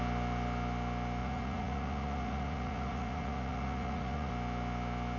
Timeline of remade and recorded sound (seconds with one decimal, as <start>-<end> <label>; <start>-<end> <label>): 0.0-1.2 recorded; 1.2-4.3 remade; 4.3-5.2 recorded